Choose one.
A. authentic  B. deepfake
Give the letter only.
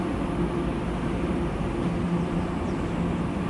A